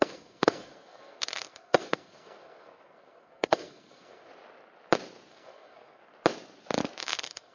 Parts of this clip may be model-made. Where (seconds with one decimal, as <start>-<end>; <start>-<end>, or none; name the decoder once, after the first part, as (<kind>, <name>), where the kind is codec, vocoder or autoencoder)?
0.0-4.3 (codec, SNAC); 5.3-6.0; 7.0-7.5